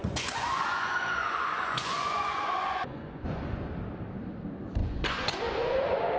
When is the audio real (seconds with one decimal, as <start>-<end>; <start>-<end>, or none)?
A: 3.7-4.8

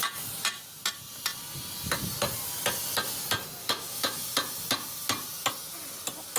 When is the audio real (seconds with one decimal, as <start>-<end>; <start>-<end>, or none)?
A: 0.0-3.6; 4.3-6.4

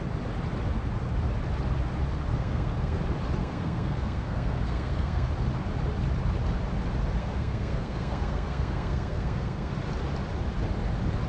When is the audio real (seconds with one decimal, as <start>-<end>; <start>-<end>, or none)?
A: 0.0-2.3; 3.0-3.4; 5.3-7.2; 9.7-11.3

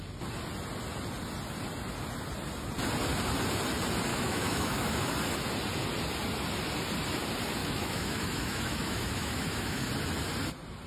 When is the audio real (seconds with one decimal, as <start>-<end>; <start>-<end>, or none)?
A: 0.0-4.1; 5.1-7.6; 9.9-10.9

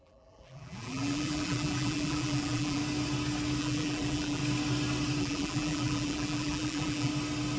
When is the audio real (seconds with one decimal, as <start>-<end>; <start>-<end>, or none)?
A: 2.8-3.6; 4.4-5.2; 7.1-7.6

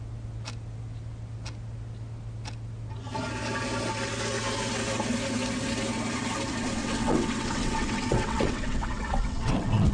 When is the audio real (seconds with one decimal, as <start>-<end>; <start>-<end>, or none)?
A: 0.0-6.8

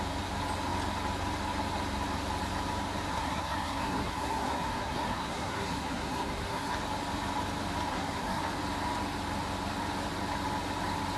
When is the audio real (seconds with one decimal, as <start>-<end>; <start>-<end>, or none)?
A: 0.0-3.1; 6.7-7.9; 8.4-11.2

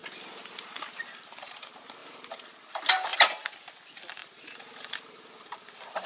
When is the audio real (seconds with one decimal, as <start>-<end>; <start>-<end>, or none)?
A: 1.0-2.0; 2.7-3.1; 3.6-4.2